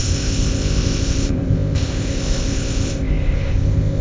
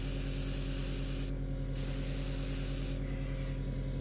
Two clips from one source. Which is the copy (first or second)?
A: first